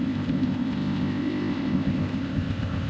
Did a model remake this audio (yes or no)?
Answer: yes